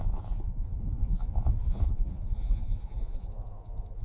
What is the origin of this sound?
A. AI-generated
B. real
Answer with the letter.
A